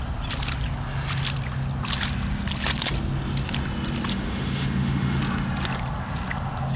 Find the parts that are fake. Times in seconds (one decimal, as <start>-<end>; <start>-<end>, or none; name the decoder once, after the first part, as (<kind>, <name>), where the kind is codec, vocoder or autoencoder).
4.1-5.2 (autoencoder, DAC-VAE)